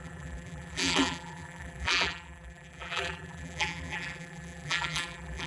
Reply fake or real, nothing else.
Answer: fake